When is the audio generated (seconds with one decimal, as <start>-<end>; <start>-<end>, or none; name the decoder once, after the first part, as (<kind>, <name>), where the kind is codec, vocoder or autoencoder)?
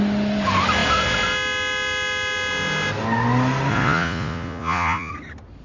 3.7-5.1 (vocoder, Vocos)